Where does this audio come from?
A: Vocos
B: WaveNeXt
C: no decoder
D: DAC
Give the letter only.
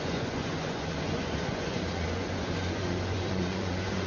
A